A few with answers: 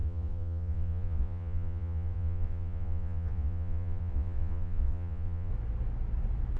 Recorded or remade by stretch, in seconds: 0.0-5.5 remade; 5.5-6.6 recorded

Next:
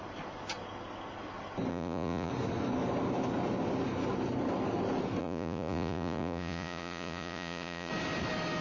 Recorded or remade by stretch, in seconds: 0.0-1.7 recorded; 1.7-2.3 remade; 2.3-5.2 recorded; 5.2-7.9 remade; 7.9-8.6 recorded

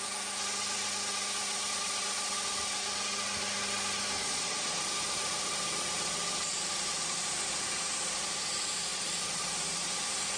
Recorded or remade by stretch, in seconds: 0.0-4.2 recorded; 4.2-4.8 remade; 4.8-8.9 recorded; 8.9-9.5 remade; 9.5-10.4 recorded

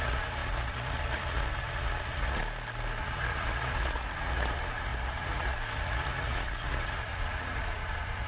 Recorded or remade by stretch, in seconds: 0.0-2.4 remade; 2.4-3.0 recorded; 3.0-8.3 remade

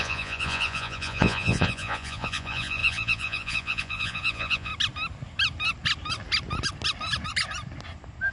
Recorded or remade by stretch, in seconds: 0.0-4.7 remade; 4.7-8.3 recorded

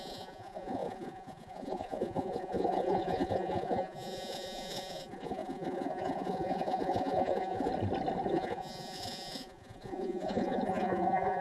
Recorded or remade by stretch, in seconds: 0.0-7.7 remade; 7.7-8.3 recorded; 8.3-11.4 remade

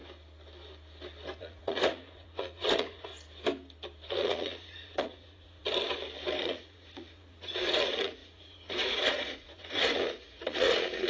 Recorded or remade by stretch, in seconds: 0.0-1.4 recorded; 1.4-3.1 remade; 3.1-4.1 recorded; 4.1-5.6 remade; 5.6-6.4 recorded; 6.4-11.1 remade

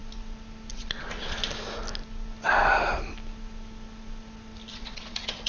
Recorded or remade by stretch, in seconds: 0.0-0.7 recorded; 0.7-1.4 remade; 1.4-4.7 recorded; 4.7-5.5 remade